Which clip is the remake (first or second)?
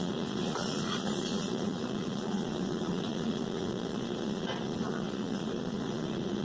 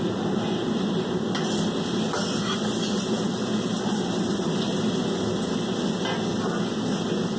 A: first